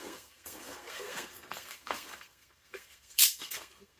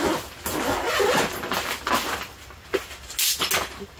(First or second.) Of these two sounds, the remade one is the first